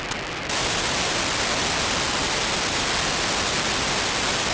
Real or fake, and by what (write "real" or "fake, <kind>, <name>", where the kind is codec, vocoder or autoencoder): real